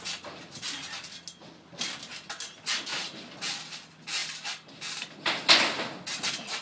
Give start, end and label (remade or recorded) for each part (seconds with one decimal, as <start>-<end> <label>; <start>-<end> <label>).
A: 0.0-6.6 recorded